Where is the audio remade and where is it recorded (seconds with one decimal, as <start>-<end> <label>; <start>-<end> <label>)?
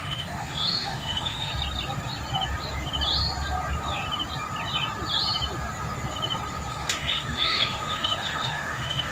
0.0-1.5 remade; 1.5-6.7 recorded; 6.7-9.1 remade